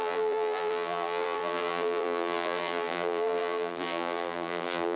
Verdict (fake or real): fake